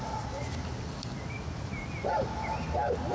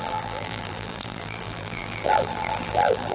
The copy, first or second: second